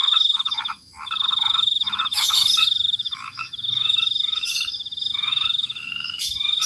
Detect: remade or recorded remade